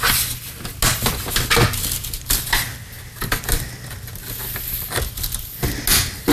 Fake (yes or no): no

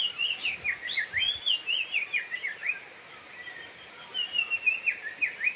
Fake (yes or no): no